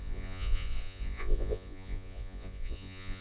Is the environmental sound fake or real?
fake